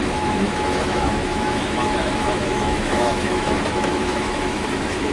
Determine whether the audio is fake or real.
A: fake